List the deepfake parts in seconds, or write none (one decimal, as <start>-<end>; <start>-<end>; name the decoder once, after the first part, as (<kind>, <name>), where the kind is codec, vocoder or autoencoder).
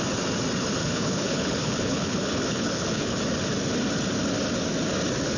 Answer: 0.8-3.2 (codec, HILCodec)